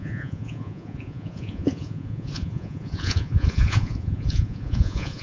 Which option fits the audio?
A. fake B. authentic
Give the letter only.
A